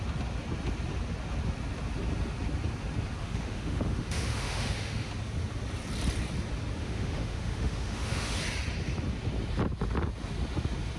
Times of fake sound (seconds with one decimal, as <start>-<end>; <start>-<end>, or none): 3.2-5.1; 6.8-8.4

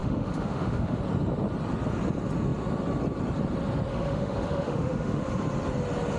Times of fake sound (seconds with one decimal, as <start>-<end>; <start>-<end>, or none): 0.0-1.0; 3.9-5.3

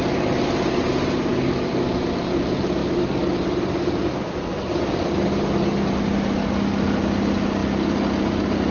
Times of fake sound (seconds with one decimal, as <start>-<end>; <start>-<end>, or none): 1.3-1.9